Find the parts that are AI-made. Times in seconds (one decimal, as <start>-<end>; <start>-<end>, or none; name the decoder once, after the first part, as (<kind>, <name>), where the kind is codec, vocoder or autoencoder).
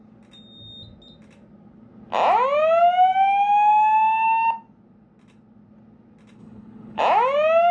6.4-7.0 (codec, HILCodec)